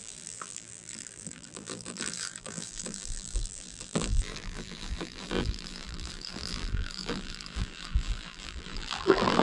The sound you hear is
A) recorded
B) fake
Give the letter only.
B